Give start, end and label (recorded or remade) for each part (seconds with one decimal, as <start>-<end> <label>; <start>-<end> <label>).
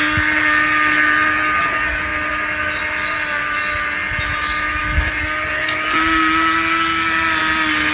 0.0-7.9 recorded